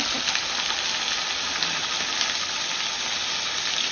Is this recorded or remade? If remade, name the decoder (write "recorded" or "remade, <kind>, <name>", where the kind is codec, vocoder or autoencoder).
recorded